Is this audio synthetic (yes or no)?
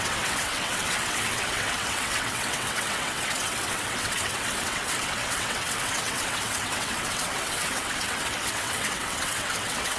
yes